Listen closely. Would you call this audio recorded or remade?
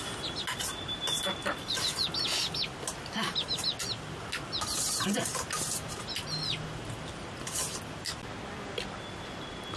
recorded